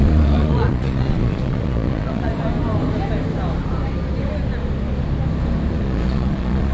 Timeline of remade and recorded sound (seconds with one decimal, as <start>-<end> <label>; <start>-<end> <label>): 0.0-2.3 remade; 2.3-5.7 recorded; 5.7-6.7 remade